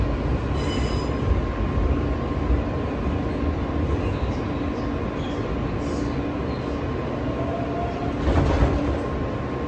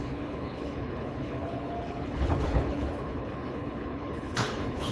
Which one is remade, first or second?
second